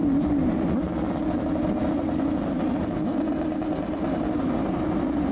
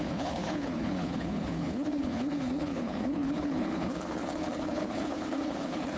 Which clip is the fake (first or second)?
second